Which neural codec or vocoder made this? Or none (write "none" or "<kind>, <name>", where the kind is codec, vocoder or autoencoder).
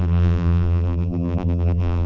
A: vocoder, BigVGAN v2